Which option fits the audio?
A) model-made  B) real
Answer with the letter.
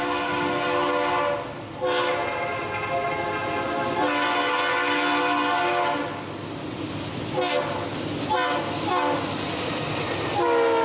B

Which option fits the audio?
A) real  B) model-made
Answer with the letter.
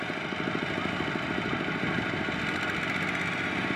A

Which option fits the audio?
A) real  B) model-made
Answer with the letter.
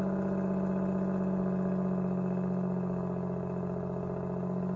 A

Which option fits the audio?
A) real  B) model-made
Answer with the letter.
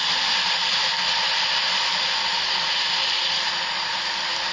A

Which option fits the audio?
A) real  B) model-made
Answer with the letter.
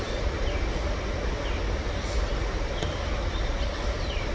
A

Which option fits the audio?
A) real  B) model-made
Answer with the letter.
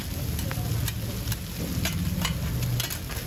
A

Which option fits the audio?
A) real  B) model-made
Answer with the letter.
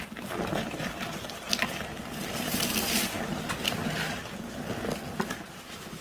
A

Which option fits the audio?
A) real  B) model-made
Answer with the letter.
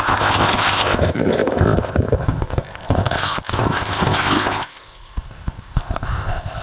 B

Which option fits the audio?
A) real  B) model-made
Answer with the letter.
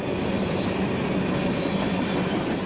A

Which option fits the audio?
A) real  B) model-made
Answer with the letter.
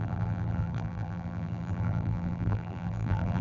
B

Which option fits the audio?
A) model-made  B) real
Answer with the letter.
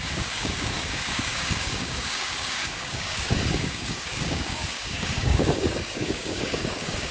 A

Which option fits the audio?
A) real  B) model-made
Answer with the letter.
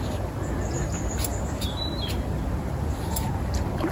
A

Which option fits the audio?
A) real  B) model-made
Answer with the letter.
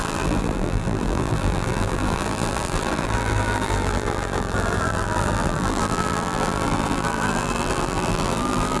B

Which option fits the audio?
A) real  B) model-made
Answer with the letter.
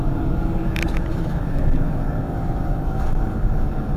B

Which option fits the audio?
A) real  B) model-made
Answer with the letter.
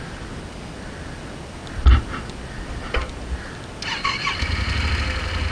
A